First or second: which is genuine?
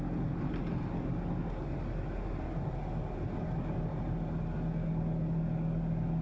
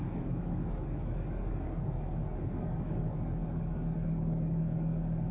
first